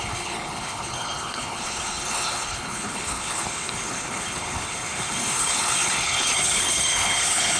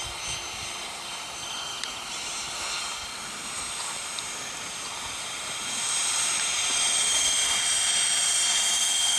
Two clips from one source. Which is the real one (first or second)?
second